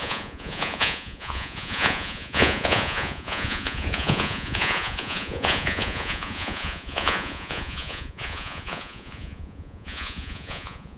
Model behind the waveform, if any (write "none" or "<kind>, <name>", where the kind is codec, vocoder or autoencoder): vocoder, Vocos